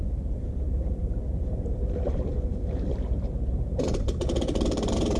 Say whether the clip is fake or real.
fake